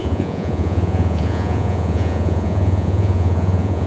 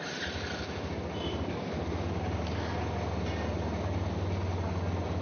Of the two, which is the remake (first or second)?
first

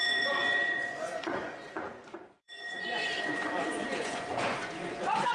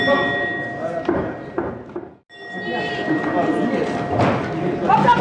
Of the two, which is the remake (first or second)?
first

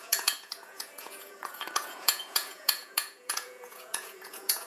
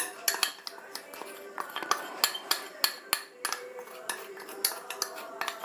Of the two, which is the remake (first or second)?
first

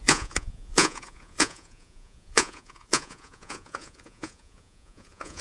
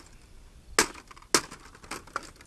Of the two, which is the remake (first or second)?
first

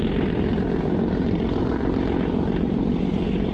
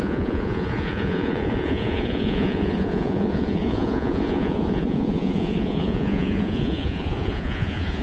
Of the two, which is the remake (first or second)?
second